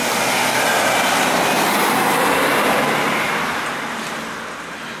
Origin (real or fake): real